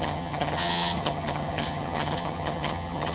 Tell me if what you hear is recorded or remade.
remade